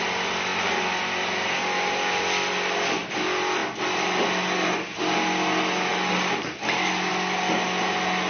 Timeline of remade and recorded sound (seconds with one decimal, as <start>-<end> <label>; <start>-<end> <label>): 0.0-8.3 recorded